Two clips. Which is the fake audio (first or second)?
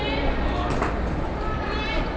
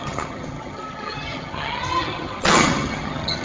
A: second